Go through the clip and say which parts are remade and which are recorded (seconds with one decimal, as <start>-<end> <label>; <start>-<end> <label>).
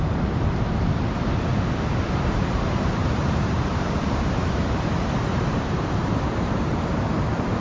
0.0-3.0 recorded; 3.0-7.6 remade